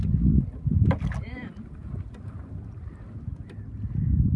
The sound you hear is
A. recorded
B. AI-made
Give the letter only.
A